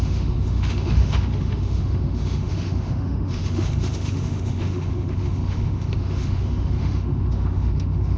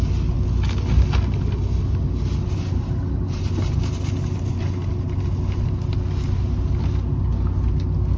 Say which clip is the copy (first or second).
first